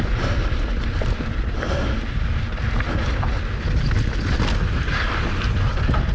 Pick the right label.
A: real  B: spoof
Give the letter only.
A